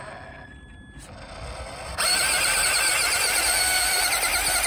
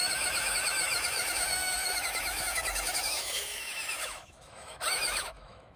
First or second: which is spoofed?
second